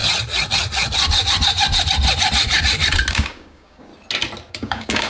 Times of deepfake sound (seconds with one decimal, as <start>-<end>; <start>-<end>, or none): 3.1-3.9; 4.5-5.1